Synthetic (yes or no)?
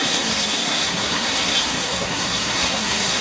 yes